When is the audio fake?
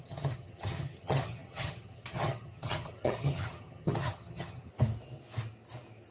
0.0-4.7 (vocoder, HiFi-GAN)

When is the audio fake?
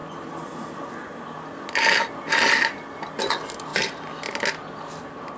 none